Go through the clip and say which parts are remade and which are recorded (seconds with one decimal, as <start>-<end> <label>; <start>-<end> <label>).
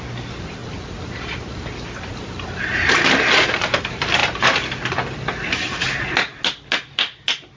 0.0-7.6 recorded